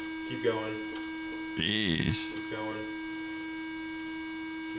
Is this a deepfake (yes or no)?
no